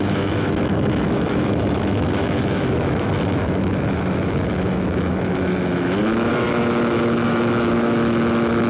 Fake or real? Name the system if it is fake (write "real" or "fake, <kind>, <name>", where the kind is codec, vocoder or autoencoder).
fake, autoencoder, DAC-VAE